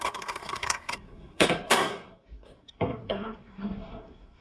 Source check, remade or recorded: remade